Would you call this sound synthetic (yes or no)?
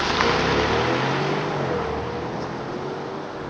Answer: no